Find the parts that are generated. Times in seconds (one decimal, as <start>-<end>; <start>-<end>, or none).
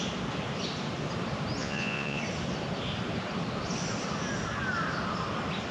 1.6-2.2